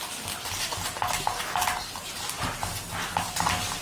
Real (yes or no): yes